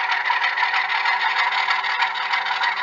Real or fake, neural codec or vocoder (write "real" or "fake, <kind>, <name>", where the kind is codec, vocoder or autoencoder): real